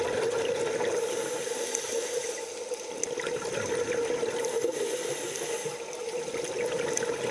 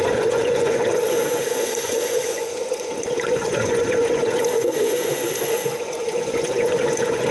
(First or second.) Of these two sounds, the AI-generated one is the second